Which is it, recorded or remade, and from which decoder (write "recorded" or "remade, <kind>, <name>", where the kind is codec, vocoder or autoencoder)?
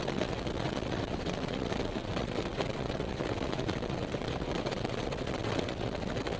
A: remade, vocoder, WaveNeXt